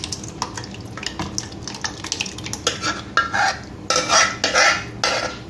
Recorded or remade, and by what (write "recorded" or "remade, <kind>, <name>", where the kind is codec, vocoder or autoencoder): recorded